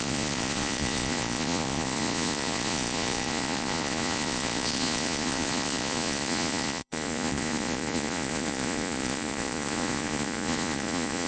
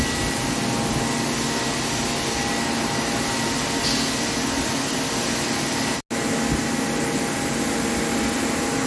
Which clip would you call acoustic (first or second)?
second